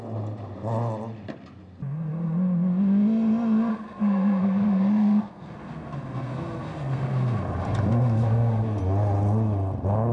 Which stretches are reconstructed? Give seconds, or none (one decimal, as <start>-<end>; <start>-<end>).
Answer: 3.7-7.4; 7.9-8.8